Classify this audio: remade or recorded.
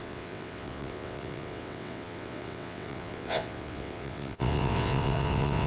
remade